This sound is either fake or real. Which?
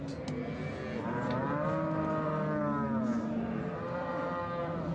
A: real